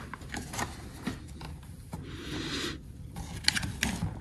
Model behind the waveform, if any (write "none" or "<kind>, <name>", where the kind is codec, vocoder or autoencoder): none